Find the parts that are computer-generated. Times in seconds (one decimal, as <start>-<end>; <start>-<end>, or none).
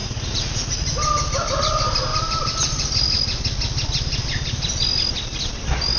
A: 0.0-0.7